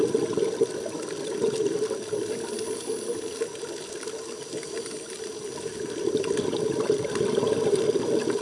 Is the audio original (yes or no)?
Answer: yes